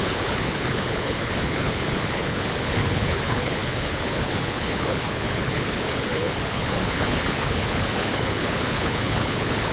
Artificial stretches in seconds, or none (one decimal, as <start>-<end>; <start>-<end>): 0.0-9.7